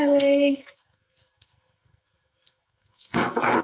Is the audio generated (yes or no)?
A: yes